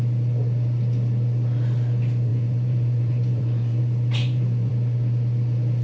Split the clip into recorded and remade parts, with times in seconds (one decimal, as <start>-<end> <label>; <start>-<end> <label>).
0.0-2.3 recorded; 2.3-3.8 remade; 3.8-4.2 recorded; 4.2-4.7 remade; 4.7-5.8 recorded